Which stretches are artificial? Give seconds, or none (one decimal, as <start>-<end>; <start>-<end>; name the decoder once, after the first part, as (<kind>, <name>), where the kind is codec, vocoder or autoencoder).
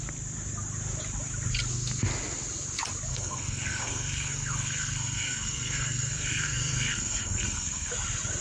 3.1-7.9 (codec, SNAC)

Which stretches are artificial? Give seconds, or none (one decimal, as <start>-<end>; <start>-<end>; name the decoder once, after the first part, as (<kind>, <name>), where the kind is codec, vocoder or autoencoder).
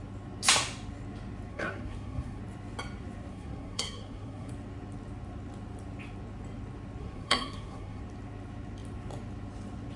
1.5-2.4 (codec, SNAC); 3.3-4.5; 7.0-8.0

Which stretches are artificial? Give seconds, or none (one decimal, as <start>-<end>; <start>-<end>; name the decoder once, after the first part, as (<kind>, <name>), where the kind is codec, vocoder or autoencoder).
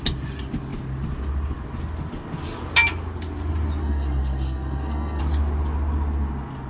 3.8-5.2 (codec, SNAC)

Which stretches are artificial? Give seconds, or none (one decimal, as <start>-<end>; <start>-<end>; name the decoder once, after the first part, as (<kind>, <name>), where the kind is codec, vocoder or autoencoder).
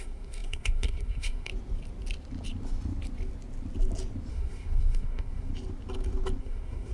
0.0-1.5 (codec, SNAC); 4.3-5.5; 6.4-6.9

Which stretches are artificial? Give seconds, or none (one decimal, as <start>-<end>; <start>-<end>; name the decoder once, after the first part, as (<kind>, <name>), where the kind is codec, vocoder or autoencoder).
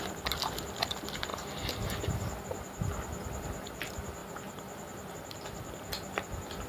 none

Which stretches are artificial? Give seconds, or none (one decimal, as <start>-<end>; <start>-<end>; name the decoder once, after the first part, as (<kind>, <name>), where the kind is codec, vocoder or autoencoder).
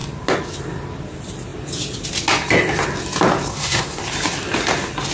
3.5-4.0 (codec, SNAC)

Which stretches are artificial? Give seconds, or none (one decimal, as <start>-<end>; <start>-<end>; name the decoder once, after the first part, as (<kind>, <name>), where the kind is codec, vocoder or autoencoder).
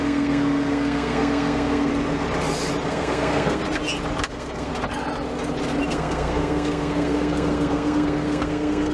0.0-1.9 (codec, SNAC); 2.9-3.6; 4.3-4.7; 5.9-8.9